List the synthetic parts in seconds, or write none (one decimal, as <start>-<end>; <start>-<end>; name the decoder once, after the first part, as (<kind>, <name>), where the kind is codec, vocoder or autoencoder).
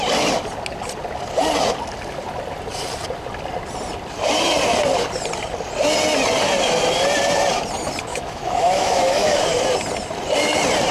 8.1-9.4 (autoencoder, DAC-VAE)